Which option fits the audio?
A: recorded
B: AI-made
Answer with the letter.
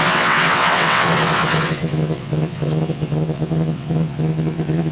B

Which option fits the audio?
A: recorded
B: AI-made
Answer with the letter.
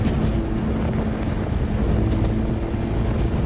A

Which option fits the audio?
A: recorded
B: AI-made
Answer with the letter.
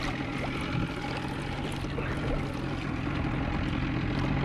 A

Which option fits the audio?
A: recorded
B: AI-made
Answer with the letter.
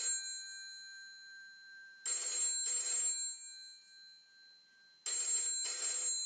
A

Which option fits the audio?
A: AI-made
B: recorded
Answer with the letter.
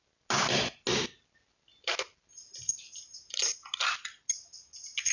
B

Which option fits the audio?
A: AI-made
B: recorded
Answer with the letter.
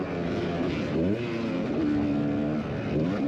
B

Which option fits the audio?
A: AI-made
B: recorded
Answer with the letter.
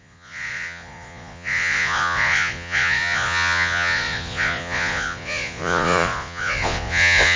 A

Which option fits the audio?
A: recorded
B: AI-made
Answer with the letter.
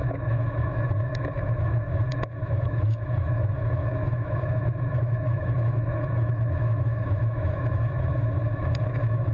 B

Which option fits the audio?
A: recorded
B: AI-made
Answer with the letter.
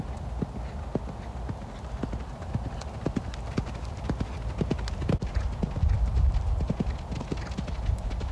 A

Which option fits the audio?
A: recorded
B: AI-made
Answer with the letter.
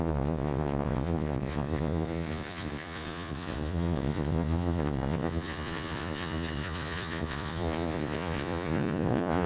B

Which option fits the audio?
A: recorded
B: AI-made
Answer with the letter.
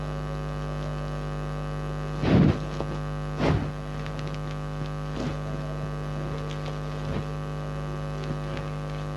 A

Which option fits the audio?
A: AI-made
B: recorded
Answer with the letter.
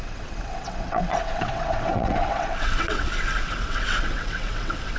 A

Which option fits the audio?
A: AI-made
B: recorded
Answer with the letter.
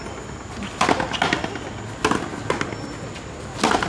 B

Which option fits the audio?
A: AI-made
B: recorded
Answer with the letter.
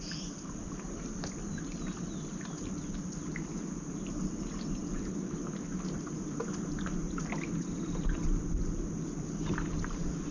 B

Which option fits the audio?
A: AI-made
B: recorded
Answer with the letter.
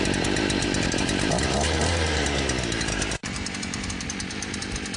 A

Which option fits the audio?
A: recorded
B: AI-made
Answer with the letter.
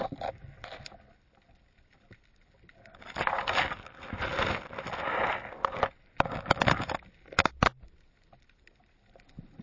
A